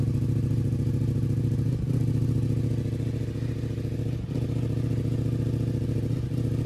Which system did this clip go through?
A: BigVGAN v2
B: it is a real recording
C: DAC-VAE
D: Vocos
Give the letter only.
B